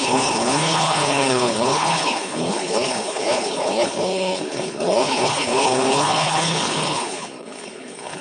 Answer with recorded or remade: remade